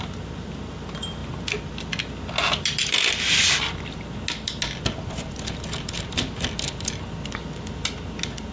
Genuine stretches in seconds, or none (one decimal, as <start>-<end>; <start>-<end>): 0.0-8.5